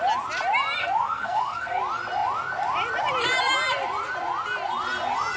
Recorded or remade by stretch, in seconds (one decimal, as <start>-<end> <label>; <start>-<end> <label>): 0.0-0.8 recorded; 0.8-1.8 remade; 1.8-5.4 recorded

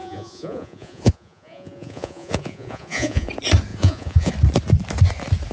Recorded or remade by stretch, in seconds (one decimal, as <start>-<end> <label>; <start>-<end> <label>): 0.0-3.3 remade; 3.3-3.7 recorded; 3.7-4.3 remade; 4.3-5.5 recorded

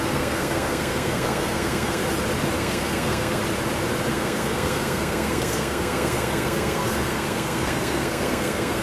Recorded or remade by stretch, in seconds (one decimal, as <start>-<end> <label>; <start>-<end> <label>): 0.0-2.0 remade; 2.0-2.6 recorded; 2.6-3.4 remade; 3.4-4.1 recorded; 4.1-8.8 remade

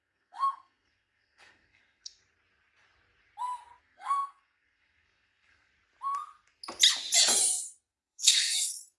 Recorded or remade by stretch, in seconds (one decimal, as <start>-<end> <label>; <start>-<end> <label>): 0.0-2.2 remade; 2.2-3.8 recorded; 3.8-5.7 remade; 5.7-7.9 recorded; 7.9-9.0 remade